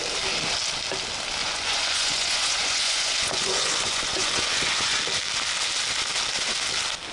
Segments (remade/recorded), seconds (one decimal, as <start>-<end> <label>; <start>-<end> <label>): 0.0-1.4 recorded; 1.4-5.0 remade; 5.0-7.1 recorded